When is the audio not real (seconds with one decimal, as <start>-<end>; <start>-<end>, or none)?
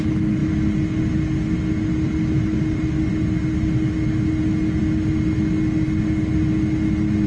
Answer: none